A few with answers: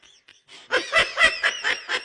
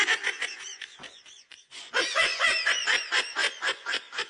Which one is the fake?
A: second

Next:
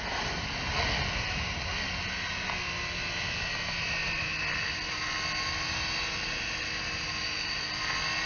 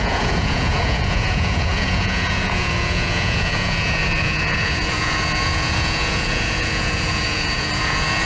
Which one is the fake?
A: second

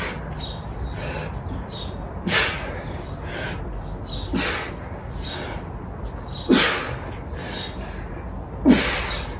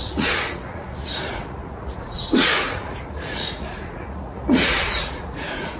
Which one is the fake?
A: second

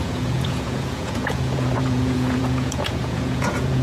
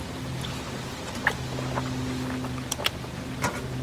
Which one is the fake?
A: first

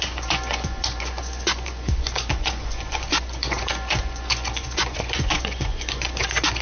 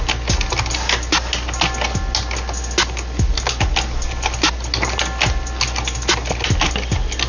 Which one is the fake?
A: first